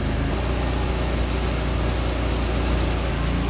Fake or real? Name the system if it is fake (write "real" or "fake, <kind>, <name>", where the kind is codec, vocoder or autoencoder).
real